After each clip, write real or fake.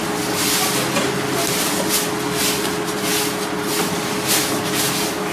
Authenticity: real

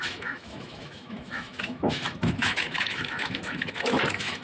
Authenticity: fake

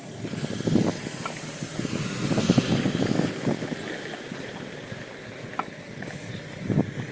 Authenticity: real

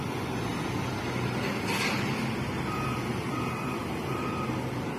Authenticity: real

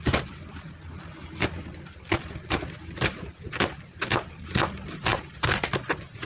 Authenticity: real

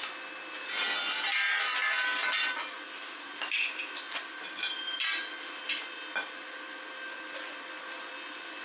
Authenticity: real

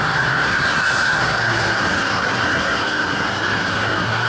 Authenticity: fake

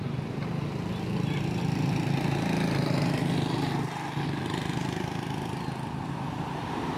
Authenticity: real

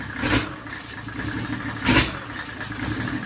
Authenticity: real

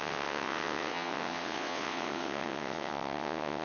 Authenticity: fake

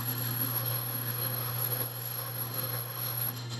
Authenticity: fake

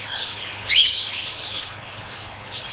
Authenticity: fake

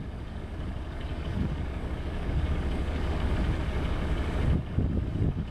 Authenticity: fake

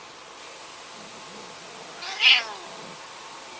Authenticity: real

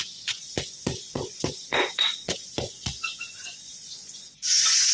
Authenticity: fake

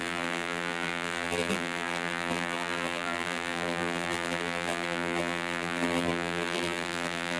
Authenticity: fake